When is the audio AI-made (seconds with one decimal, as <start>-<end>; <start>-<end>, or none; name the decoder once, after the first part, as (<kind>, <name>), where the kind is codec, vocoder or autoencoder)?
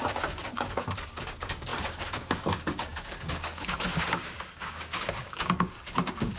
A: 0.0-6.4 (codec, DAC)